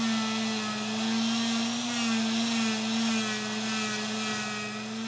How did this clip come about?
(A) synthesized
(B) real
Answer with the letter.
B